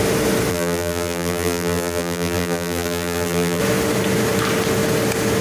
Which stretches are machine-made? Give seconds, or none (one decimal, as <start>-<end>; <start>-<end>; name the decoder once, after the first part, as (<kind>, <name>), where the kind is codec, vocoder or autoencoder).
0.5-3.6 (vocoder, BigVGAN v2)